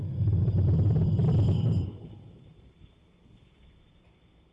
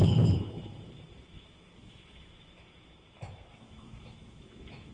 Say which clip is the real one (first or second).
first